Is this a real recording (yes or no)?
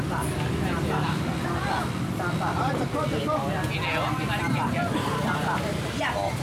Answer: yes